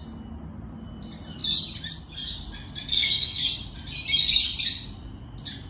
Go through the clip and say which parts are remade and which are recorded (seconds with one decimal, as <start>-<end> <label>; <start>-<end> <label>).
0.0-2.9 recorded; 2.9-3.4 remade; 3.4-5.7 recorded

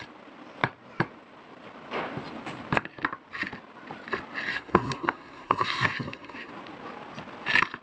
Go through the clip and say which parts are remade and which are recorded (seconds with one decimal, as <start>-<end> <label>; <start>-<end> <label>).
0.0-4.5 recorded; 4.5-6.5 remade; 6.5-7.8 recorded

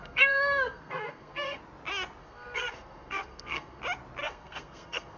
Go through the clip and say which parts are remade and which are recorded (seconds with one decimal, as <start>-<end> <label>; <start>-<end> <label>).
0.0-1.6 remade; 1.6-2.2 recorded; 2.2-3.8 remade; 3.8-4.2 recorded; 4.2-5.2 remade